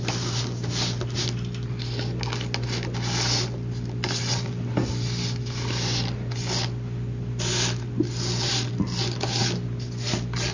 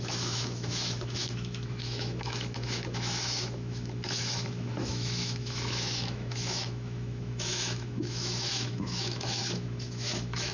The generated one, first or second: second